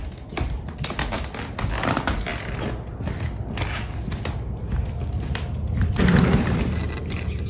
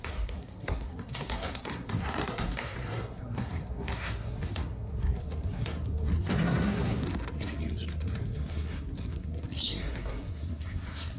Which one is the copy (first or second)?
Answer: second